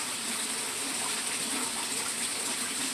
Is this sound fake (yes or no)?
no